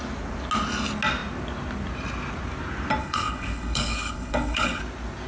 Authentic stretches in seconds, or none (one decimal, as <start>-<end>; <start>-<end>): 0.0-3.0; 4.8-5.3